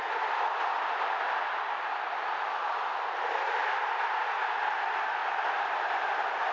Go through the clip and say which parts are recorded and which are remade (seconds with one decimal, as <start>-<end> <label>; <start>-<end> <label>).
0.0-6.5 recorded